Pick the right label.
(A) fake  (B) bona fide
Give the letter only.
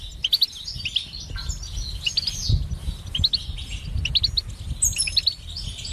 B